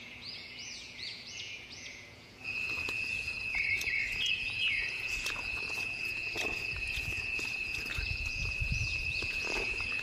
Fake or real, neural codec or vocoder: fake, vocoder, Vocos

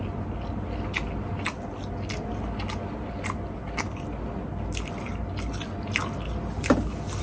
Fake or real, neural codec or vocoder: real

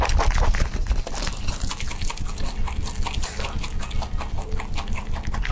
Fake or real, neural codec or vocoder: real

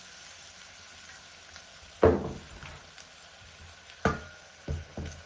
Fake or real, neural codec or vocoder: real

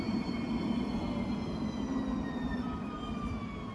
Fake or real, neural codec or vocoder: real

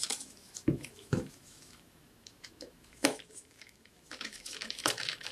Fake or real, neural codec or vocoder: fake, autoencoder, DAC-VAE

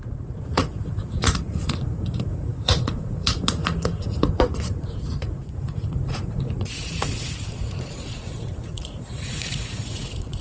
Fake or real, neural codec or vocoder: fake, vocoder, Vocos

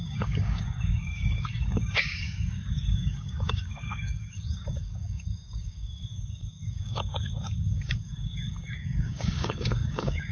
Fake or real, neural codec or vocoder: fake, codec, DAC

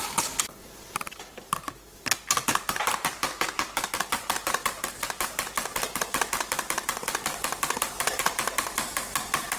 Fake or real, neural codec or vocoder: real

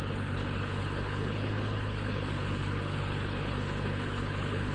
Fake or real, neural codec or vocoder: fake, codec, HILCodec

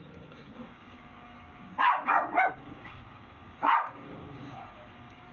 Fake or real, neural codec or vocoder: fake, codec, DAC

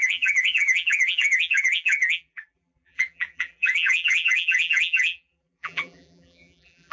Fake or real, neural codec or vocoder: fake, vocoder, BigVGAN v2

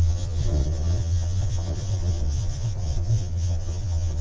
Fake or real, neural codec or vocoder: fake, vocoder, Vocos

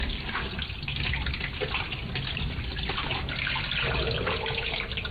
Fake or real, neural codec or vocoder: real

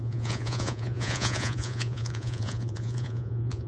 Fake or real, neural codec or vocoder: fake, vocoder, Vocos